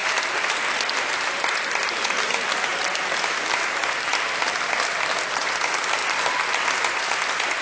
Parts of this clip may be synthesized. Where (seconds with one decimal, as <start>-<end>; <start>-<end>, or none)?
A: none